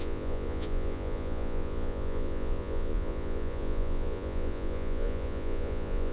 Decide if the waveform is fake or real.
fake